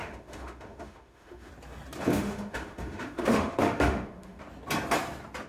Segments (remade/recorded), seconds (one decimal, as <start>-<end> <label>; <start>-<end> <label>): 0.0-1.5 remade; 1.5-2.1 recorded; 2.1-4.4 remade; 4.4-5.5 recorded